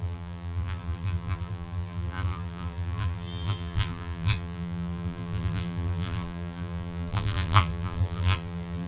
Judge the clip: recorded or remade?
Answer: remade